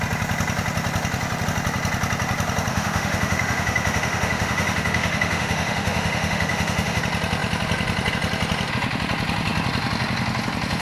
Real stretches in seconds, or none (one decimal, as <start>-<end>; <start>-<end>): 0.0-2.7; 7.0-10.8